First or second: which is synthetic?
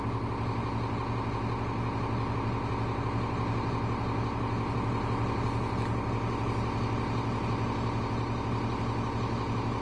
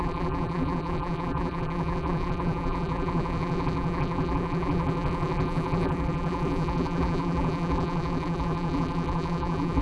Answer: second